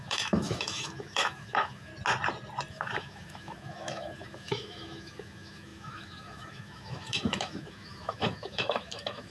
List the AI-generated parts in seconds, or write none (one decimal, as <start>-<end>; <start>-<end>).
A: 0.0-1.9; 2.7-9.3